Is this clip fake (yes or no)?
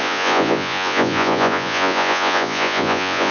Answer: yes